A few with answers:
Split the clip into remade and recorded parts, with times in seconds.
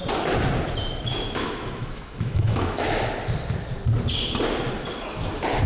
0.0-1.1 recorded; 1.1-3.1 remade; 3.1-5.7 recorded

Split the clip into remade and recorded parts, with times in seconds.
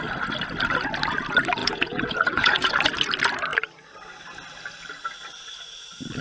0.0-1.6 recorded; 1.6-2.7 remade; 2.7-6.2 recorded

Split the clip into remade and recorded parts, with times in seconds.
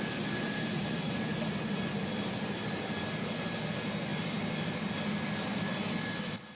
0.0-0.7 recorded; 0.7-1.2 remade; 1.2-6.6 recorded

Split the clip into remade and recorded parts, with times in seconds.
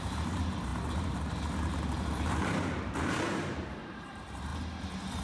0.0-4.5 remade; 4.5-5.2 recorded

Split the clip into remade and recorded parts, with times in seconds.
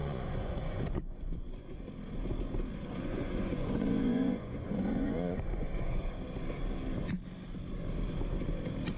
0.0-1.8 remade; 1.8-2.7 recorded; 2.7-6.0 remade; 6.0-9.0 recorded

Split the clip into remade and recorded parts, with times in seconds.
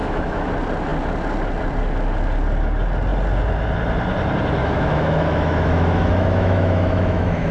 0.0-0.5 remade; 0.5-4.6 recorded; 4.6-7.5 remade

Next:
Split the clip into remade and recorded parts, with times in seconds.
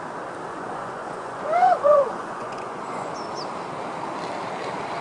0.0-0.5 recorded; 0.5-3.1 remade; 3.1-5.0 recorded